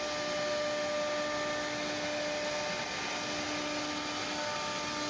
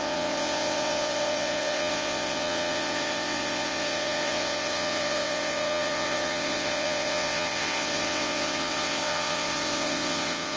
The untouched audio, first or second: first